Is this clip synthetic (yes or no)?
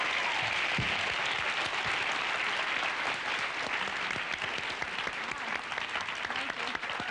no